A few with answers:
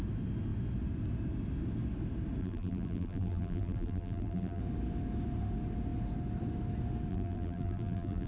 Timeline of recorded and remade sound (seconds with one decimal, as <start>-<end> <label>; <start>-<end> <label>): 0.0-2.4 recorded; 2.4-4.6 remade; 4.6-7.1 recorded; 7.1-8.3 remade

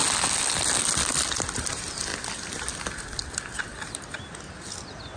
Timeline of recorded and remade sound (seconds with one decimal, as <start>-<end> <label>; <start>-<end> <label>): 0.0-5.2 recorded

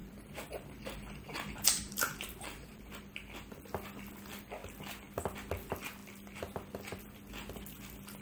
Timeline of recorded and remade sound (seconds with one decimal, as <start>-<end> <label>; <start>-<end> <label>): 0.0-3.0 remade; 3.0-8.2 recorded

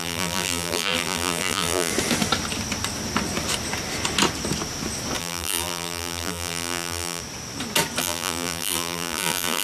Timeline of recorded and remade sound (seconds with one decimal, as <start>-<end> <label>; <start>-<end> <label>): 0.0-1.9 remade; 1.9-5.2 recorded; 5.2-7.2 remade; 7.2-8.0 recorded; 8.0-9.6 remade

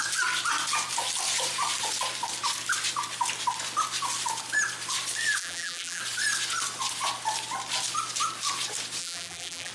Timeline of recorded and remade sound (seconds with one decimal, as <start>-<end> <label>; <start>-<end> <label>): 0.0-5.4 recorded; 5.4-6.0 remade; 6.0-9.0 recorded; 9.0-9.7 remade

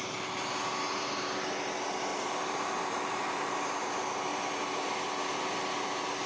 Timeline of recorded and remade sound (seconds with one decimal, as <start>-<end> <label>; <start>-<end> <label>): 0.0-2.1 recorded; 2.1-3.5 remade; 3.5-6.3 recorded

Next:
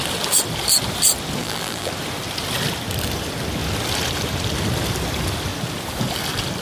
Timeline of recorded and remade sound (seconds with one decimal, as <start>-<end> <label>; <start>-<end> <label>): 0.0-1.4 recorded; 1.4-1.9 remade; 1.9-6.6 recorded

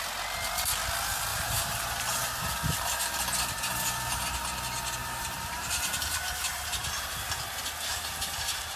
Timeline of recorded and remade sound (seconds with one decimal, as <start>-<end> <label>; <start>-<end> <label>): 0.0-1.3 recorded; 1.3-2.0 remade; 2.0-5.0 recorded; 5.0-6.9 remade; 6.9-7.9 recorded; 7.9-8.8 remade